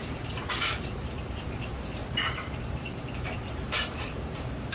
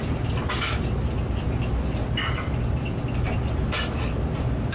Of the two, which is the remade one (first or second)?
first